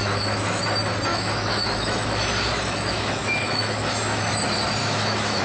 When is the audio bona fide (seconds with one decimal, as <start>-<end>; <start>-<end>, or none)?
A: 0.6-1.1; 4.3-4.8